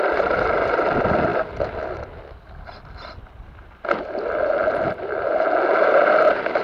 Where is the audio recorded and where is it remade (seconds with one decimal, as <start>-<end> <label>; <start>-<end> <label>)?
0.0-1.3 remade; 1.3-5.3 recorded; 5.3-6.6 remade